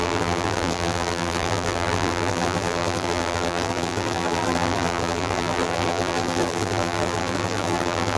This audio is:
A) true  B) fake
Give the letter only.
B